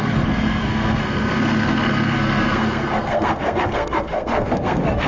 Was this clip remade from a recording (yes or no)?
yes